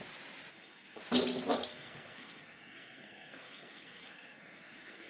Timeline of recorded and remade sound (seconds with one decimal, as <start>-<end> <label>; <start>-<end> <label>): 0.0-0.5 recorded; 0.5-1.0 remade; 1.0-1.7 recorded; 1.7-5.1 remade